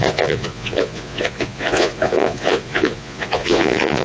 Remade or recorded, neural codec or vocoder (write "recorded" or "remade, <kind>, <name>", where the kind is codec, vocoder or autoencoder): remade, vocoder, Vocos